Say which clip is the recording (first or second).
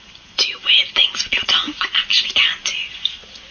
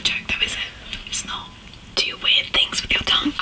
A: second